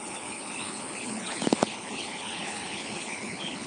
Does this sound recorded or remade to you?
remade